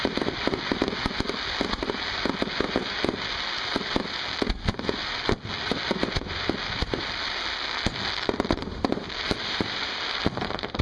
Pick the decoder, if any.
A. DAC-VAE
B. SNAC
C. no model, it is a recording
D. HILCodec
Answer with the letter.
C